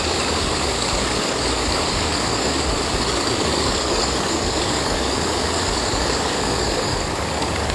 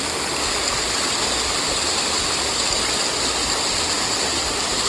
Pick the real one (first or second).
second